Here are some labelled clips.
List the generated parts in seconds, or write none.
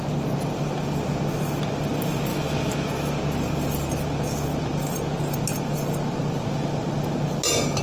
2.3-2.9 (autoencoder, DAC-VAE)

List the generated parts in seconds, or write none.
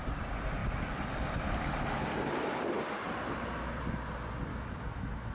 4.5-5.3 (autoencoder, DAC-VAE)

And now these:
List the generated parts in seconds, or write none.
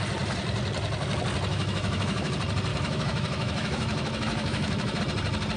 1.5-2.3 (autoencoder, DAC-VAE); 2.7-5.0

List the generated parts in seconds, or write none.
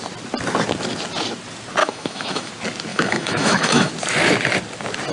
1.8-2.5 (autoencoder, DAC-VAE); 2.9-3.9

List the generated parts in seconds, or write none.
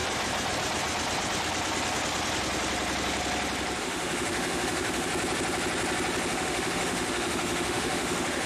3.8-5.1 (autoencoder, DAC-VAE); 6.3-8.5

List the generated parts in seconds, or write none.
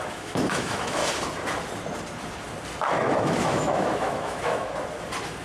0.0-1.0 (autoencoder, DAC-VAE); 2.9-4.7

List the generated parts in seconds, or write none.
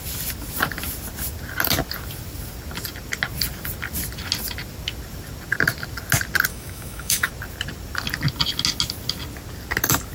6.5-7.3 (autoencoder, DAC-VAE)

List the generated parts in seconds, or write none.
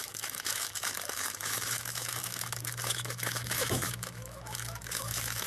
0.0-5.5 (autoencoder, DAC-VAE)